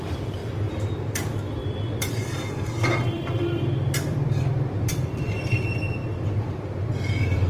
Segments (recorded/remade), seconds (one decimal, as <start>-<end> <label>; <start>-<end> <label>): 0.0-0.4 remade; 0.4-1.1 recorded; 1.1-7.5 remade